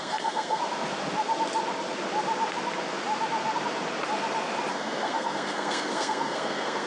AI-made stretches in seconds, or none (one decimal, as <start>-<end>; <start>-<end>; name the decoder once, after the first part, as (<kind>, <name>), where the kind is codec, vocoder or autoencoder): 0.0-0.6 (codec, SNAC); 4.7-6.9